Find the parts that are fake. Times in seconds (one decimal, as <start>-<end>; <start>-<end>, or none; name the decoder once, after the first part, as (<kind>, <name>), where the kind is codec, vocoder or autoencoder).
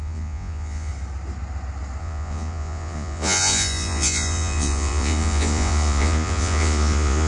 0.0-0.9 (vocoder, Vocos); 2.0-7.3